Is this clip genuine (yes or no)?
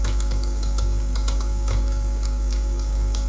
no